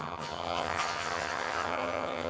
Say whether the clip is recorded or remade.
remade